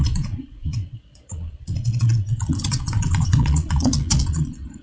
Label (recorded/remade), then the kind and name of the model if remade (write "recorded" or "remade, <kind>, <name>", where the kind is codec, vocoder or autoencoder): remade, vocoder, Vocos